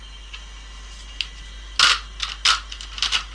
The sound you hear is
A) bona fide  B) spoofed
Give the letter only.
A